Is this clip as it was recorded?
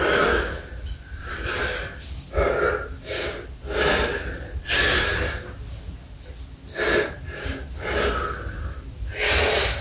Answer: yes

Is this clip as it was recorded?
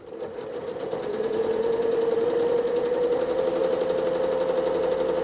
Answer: yes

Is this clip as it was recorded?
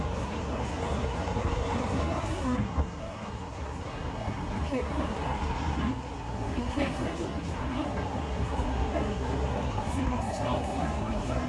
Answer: no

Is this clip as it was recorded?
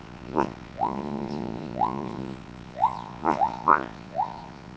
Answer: no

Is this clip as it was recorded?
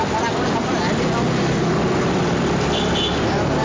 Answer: yes